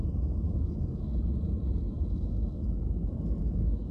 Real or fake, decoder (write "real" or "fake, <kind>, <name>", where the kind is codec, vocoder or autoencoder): real